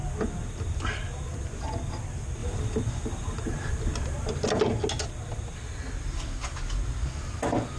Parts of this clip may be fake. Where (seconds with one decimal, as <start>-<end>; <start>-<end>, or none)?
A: none